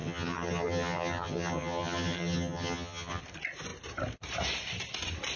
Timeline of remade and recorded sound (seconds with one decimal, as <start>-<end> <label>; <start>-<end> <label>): 0.0-3.2 remade; 3.2-5.4 recorded